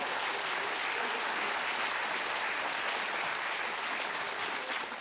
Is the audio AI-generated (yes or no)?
no